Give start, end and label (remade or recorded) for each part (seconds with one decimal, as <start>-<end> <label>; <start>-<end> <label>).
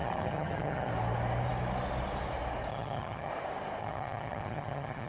0.0-0.9 remade; 0.9-2.7 recorded; 2.7-3.3 remade; 3.3-3.8 recorded; 3.8-5.1 remade